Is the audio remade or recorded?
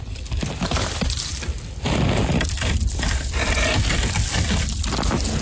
recorded